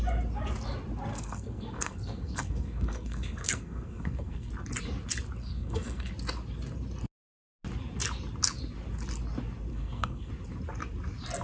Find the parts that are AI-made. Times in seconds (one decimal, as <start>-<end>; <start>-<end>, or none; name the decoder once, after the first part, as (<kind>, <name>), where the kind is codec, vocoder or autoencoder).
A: 1.1-4.5 (codec, SNAC); 5.4-6.1; 9.7-10.3